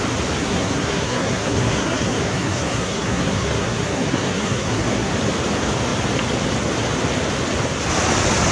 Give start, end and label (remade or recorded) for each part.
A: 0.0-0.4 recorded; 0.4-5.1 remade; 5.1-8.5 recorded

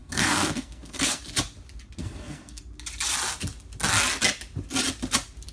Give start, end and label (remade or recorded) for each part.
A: 0.0-1.2 remade; 1.2-2.0 recorded; 2.0-2.6 remade; 2.6-5.5 recorded

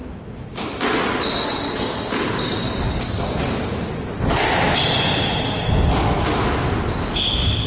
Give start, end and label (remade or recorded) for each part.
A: 0.0-7.7 recorded

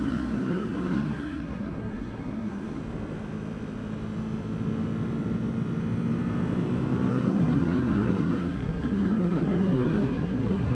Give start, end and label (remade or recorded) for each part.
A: 0.0-2.8 remade; 2.8-7.1 recorded; 7.1-10.7 remade

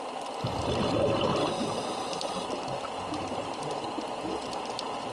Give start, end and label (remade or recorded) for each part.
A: 0.0-5.1 recorded

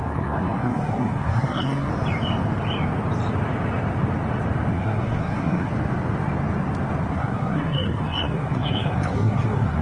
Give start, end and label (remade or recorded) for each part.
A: 0.0-1.9 remade; 1.9-4.7 recorded; 4.7-5.7 remade; 5.7-7.1 recorded; 7.1-9.8 remade